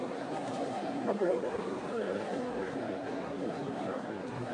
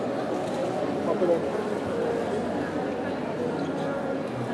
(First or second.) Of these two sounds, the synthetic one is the first